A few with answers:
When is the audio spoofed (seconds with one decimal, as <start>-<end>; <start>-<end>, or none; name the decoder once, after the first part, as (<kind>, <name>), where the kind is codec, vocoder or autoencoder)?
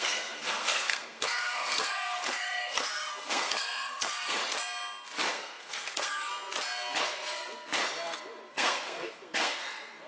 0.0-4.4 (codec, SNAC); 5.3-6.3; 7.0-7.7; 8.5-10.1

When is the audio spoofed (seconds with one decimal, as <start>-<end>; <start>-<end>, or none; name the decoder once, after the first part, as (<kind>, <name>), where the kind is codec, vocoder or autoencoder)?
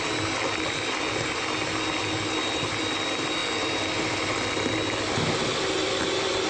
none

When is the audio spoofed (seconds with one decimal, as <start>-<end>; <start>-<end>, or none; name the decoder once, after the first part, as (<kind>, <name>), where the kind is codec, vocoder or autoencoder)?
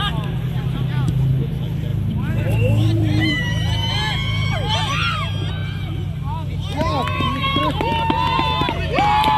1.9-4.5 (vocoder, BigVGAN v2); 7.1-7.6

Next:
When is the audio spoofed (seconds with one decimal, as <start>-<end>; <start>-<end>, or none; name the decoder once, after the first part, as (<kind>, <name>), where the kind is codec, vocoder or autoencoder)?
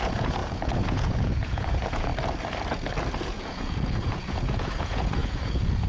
0.0-2.1 (vocoder, Vocos); 3.2-5.9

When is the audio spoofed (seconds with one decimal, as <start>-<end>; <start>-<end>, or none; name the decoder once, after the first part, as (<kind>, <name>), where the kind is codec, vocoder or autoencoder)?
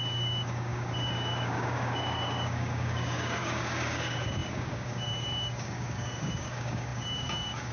0.0-7.7 (codec, DAC)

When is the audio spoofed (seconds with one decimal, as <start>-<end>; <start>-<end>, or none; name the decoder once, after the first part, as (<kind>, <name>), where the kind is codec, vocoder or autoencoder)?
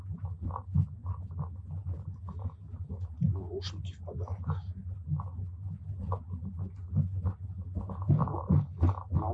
none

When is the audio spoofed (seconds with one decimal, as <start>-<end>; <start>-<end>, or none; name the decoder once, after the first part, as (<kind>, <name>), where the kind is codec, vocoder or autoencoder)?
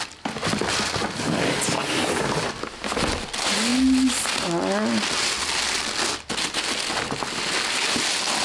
none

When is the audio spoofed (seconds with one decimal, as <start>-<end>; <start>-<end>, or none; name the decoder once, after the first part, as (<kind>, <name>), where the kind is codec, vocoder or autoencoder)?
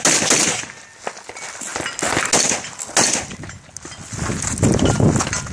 none